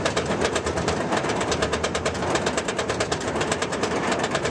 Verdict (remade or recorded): remade